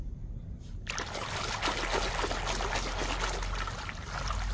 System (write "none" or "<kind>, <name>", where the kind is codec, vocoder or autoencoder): none